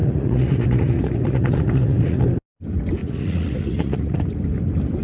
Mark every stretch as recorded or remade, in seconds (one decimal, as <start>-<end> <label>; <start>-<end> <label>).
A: 0.0-2.2 remade; 2.2-3.0 recorded; 3.0-4.2 remade; 4.2-5.0 recorded